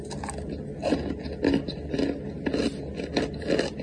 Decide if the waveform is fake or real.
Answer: real